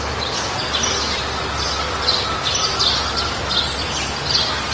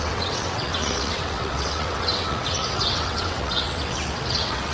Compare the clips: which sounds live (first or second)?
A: first